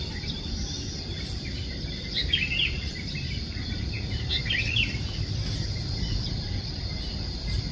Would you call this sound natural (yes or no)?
no